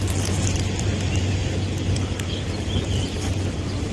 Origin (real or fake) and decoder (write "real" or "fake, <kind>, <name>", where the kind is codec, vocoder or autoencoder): real